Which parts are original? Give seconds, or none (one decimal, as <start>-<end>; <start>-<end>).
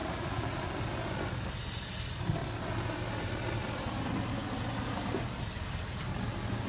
0.7-6.7